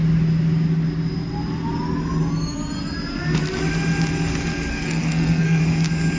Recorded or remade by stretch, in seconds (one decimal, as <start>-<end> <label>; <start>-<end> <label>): 0.0-4.7 recorded; 4.7-5.6 remade; 5.6-6.2 recorded